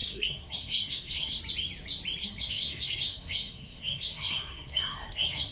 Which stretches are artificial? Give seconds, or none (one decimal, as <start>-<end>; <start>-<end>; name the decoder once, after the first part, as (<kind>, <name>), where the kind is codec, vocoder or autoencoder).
0.0-1.4 (codec, SNAC); 2.2-5.5